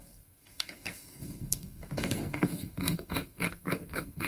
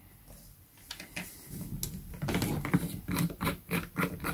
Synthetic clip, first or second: first